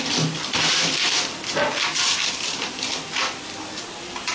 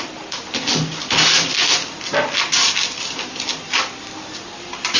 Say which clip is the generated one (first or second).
first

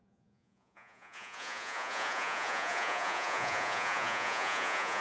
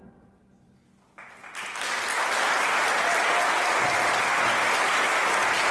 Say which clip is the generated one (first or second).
first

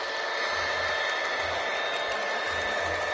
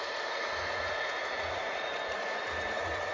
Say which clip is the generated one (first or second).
second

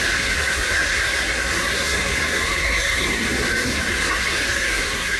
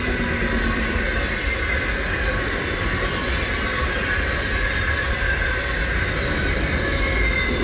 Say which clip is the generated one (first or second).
first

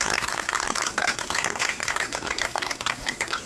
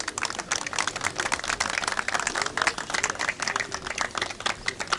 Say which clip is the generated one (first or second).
first